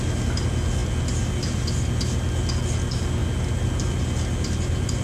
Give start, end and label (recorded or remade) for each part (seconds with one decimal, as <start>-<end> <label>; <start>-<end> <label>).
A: 0.0-5.0 recorded